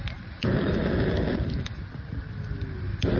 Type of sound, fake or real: real